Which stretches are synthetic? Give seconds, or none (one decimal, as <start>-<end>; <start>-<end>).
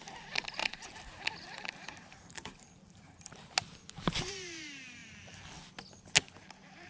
0.6-3.5